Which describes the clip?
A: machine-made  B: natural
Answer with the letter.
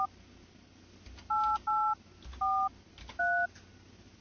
B